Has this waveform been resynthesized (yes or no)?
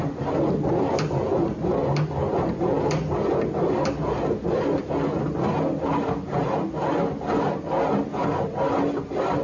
no